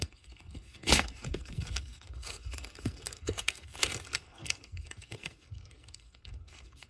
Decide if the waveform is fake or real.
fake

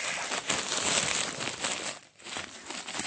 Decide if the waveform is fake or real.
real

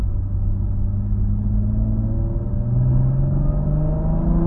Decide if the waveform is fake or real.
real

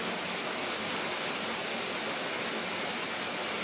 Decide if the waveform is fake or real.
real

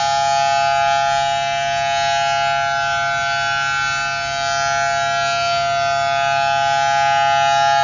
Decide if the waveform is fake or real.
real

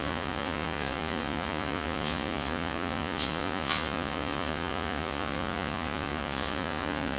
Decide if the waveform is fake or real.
fake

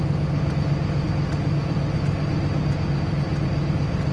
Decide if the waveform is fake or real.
real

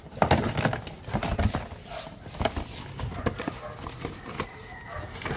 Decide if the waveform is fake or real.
real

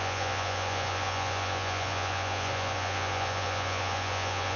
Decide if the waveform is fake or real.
fake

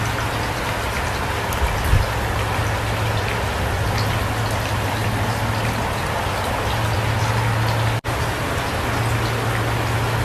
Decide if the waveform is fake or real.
real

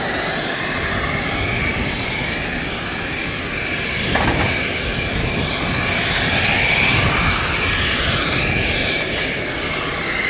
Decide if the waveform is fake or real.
real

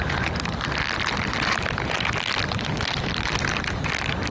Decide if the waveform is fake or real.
fake